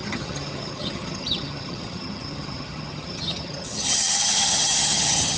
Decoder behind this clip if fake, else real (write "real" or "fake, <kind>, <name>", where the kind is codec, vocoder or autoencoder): fake, vocoder, HiFi-GAN